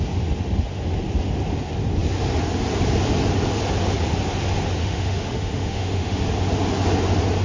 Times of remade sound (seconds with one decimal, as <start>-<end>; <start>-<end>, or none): 4.8-6.2